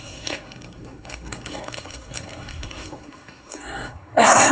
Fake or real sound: fake